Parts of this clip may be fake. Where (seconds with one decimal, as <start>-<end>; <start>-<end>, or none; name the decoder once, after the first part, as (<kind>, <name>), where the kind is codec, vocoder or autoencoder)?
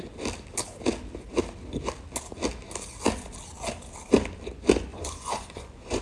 4.9-6.0 (vocoder, Vocos)